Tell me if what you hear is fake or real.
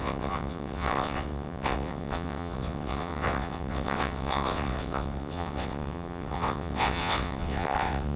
fake